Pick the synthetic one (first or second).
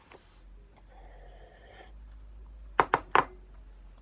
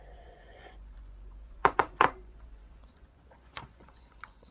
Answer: second